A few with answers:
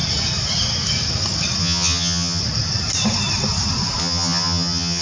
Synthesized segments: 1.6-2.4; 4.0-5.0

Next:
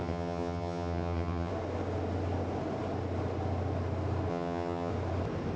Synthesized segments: 0.0-1.5; 4.3-4.9

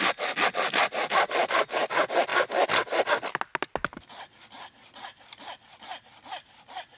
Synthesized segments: none

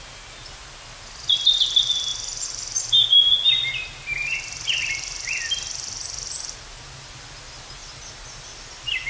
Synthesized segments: none